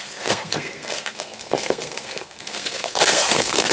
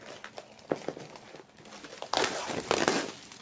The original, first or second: second